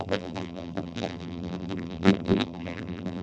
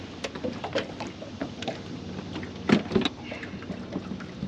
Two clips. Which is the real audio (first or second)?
second